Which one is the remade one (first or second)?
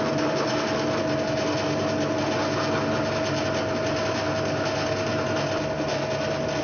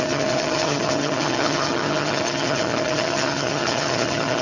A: second